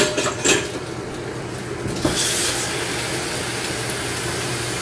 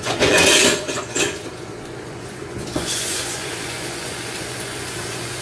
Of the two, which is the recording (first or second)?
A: first